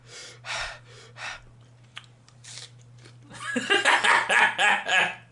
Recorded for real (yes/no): yes